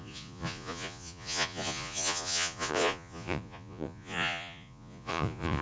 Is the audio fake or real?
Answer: fake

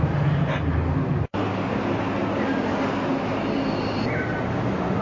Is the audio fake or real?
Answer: real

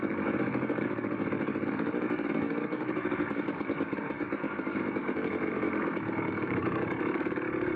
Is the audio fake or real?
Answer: fake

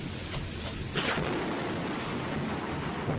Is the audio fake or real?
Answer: real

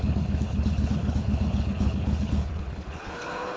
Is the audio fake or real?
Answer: fake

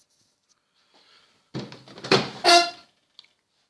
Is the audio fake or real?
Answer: real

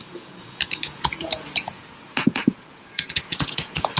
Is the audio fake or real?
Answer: fake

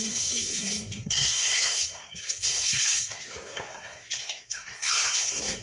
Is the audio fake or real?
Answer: fake